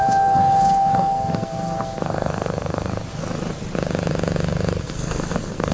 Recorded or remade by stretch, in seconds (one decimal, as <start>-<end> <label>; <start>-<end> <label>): 0.0-2.9 remade; 2.9-4.8 recorded; 4.8-5.7 remade